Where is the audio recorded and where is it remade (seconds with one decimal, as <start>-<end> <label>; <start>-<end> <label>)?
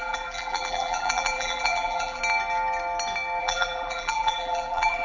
0.0-2.2 remade; 2.2-3.4 recorded; 3.4-5.0 remade